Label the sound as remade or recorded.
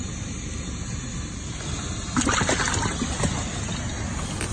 recorded